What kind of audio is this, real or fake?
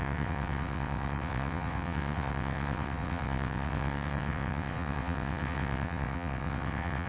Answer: fake